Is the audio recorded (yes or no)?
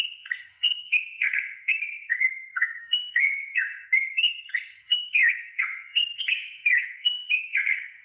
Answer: no